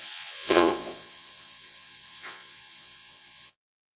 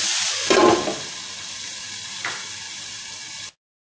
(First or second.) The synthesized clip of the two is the first